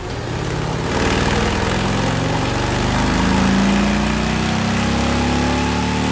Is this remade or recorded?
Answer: recorded